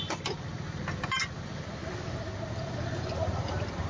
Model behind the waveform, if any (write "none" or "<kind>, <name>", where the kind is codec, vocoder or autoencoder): none